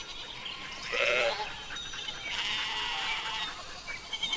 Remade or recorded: recorded